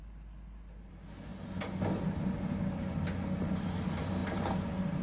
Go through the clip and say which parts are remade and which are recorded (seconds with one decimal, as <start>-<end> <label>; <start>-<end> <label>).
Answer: 0.0-5.0 recorded